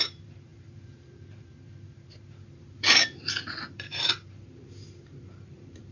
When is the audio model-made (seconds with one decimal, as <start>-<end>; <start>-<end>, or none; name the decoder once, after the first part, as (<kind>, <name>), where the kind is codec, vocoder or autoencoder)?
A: 0.0-5.9 (vocoder, BigVGAN v2)